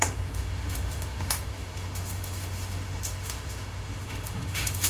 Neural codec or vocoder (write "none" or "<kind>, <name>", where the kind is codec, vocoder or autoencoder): autoencoder, DAC-VAE